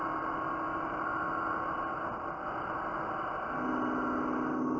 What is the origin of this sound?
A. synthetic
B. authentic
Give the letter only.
B